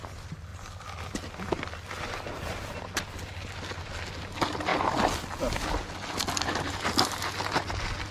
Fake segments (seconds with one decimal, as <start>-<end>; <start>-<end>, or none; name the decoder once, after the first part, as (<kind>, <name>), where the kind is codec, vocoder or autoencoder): none

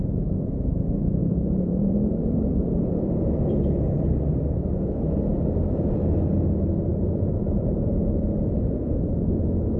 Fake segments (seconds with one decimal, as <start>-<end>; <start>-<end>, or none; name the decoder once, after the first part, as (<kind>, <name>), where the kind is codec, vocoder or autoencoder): 1.2-3.2 (vocoder, BigVGAN v2); 6.9-9.1

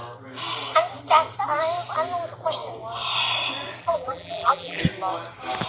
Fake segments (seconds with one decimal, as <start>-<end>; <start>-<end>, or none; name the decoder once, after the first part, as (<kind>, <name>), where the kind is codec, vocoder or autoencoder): 3.8-4.8 (vocoder, BigVGAN v2)

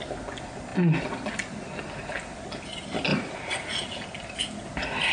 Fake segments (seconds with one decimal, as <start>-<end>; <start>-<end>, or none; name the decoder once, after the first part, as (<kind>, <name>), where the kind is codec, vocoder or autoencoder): 3.1-4.4 (vocoder, BigVGAN v2)

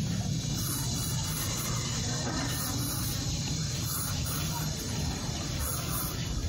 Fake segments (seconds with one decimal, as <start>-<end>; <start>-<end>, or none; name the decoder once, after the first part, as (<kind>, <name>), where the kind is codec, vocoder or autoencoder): 0.0-1.2 (vocoder, BigVGAN v2); 2.8-6.5

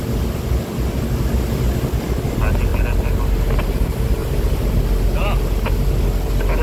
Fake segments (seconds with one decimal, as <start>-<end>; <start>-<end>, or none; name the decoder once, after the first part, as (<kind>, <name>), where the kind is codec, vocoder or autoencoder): 4.2-4.7 (vocoder, BigVGAN v2)

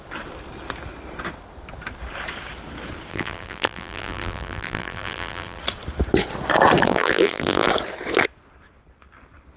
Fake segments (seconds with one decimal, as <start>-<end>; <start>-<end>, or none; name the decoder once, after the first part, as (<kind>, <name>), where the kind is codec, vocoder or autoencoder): 3.1-5.6 (vocoder, BigVGAN v2); 6.8-7.7

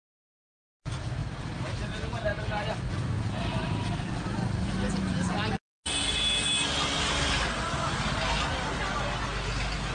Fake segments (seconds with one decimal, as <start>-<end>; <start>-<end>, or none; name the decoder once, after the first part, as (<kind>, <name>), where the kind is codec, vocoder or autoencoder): none